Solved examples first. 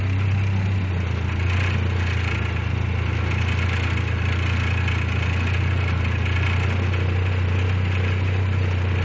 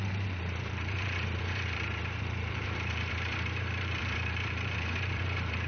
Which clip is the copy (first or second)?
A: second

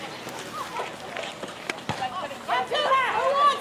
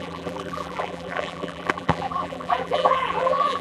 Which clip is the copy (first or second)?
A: second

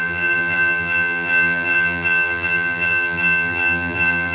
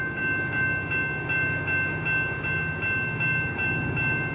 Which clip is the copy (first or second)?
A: first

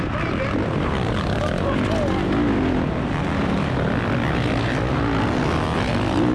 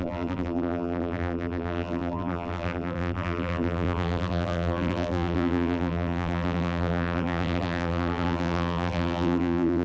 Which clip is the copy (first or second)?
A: second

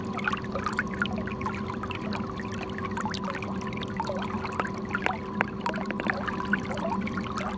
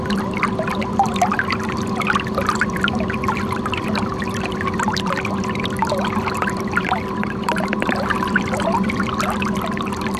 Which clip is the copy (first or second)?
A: second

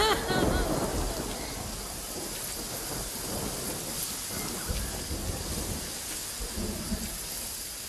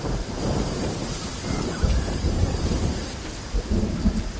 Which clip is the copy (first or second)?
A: second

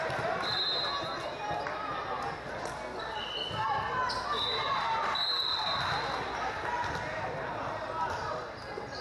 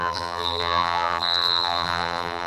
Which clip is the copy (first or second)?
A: second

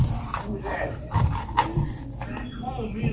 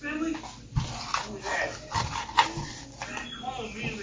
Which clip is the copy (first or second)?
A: first